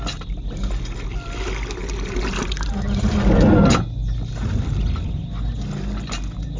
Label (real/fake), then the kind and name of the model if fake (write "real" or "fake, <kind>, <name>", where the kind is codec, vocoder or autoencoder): real